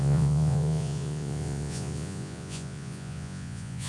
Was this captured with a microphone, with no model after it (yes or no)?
no